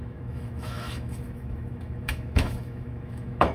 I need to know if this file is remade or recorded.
remade